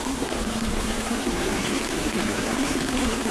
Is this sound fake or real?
fake